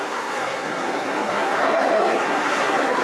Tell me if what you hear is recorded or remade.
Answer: remade